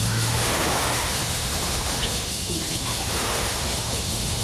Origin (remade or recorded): remade